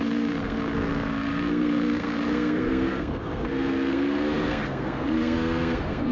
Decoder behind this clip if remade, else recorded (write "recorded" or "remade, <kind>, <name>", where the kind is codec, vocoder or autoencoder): remade, codec, SNAC